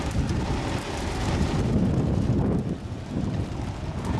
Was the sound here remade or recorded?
recorded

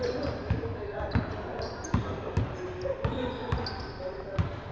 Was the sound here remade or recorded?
recorded